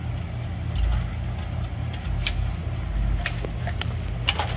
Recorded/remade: recorded